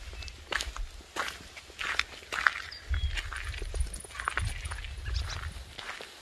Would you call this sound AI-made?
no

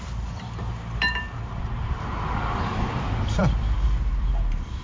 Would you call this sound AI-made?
yes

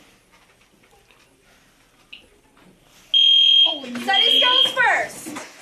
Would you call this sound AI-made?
no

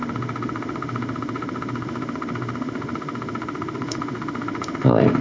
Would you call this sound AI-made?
yes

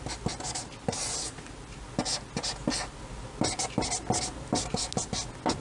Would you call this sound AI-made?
no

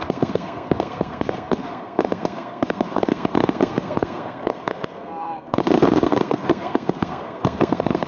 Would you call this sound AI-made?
yes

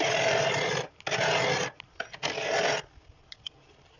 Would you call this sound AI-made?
no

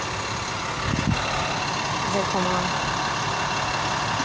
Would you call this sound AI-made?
no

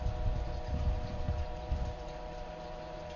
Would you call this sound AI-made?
yes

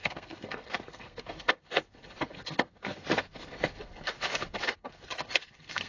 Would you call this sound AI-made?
yes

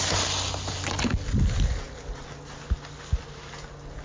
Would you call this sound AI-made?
no